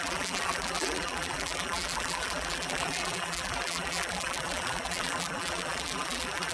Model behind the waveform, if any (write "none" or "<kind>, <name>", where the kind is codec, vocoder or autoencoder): vocoder, BigVGAN v2